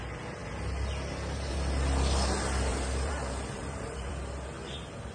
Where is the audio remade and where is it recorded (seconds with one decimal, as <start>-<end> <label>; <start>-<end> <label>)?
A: 0.0-2.7 recorded; 2.7-4.1 remade; 4.1-5.1 recorded